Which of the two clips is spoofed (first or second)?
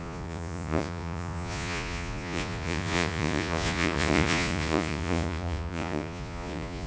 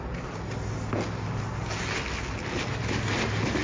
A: first